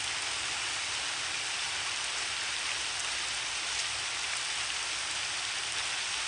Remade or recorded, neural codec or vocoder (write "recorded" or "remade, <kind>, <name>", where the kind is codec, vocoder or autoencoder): recorded